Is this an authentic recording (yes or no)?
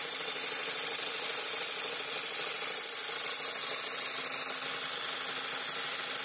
yes